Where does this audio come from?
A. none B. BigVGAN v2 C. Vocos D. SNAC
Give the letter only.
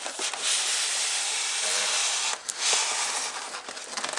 A